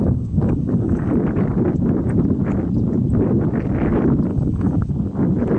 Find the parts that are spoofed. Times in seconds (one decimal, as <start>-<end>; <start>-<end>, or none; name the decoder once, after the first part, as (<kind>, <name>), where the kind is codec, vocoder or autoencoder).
0.0-1.1 (codec, DAC); 4.3-4.9